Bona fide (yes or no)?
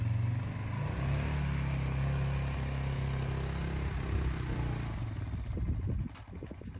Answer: yes